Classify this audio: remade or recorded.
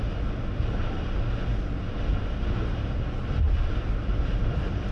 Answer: recorded